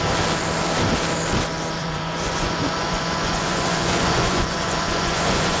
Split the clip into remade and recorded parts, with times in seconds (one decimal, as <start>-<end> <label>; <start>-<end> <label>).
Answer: 0.0-1.8 recorded; 1.8-5.6 remade